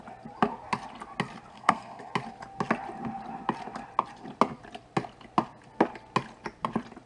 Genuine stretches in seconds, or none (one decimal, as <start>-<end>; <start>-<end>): 0.0-1.5; 2.1-7.1